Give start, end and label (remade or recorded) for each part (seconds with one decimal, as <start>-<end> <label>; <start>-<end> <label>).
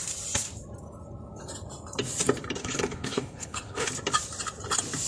0.0-2.6 recorded; 2.6-3.9 remade; 3.9-5.1 recorded